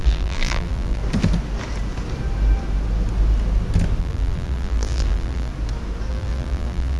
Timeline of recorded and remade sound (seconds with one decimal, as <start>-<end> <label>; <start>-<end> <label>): 0.0-1.0 remade; 1.0-4.0 recorded; 4.0-5.5 remade; 5.5-6.1 recorded; 6.1-7.0 remade